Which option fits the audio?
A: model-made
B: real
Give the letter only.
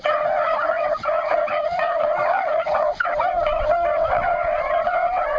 A